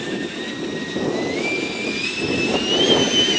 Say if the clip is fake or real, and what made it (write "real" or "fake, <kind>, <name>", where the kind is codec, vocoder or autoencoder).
real